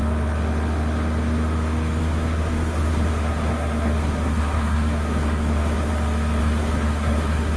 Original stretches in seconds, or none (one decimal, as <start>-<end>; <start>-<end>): 0.0-2.0; 5.9-6.4